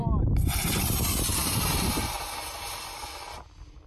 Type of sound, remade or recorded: recorded